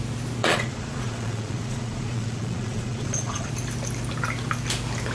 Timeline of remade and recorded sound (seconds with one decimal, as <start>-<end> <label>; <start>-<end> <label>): 0.0-0.4 recorded; 0.4-3.5 remade; 3.5-5.1 recorded